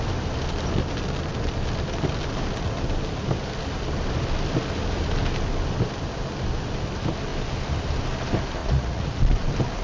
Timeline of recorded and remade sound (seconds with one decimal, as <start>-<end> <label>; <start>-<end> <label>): 0.0-8.6 recorded; 8.6-9.1 remade; 9.1-9.8 recorded